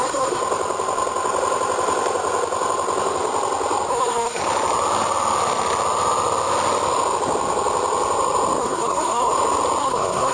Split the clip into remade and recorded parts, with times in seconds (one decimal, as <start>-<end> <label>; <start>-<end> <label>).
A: 0.0-0.4 remade; 0.4-3.9 recorded; 3.9-4.4 remade; 4.4-8.6 recorded; 8.6-9.3 remade; 9.3-9.8 recorded; 9.8-10.3 remade